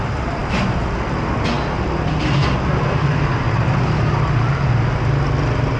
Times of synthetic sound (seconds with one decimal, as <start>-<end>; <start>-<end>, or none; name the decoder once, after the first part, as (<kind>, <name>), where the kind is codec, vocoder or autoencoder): none